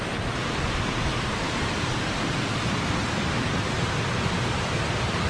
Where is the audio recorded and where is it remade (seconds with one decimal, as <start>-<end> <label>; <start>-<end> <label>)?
0.0-1.1 remade; 1.1-4.3 recorded; 4.3-5.3 remade